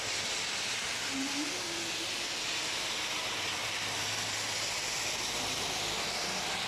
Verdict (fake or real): real